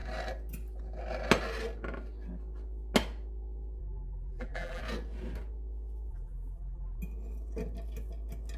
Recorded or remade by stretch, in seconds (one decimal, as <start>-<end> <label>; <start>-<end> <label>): 0.0-3.8 recorded; 3.8-4.8 remade; 4.8-6.1 recorded; 6.1-7.0 remade; 7.0-8.6 recorded